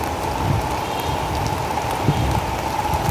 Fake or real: real